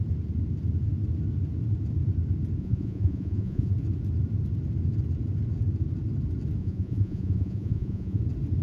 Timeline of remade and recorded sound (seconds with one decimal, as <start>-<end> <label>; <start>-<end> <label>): 0.0-2.6 recorded; 2.6-3.7 remade; 3.7-6.6 recorded; 6.6-8.2 remade; 8.2-8.6 recorded